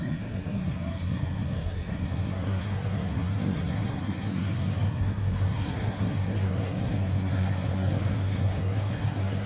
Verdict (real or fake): fake